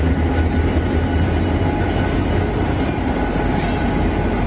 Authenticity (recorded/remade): recorded